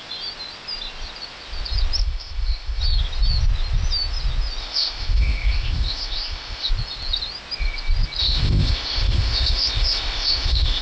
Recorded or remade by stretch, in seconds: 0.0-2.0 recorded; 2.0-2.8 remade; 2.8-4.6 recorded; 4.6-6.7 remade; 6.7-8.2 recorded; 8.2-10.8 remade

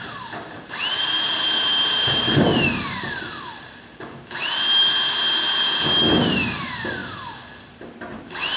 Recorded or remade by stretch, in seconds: 0.0-8.6 recorded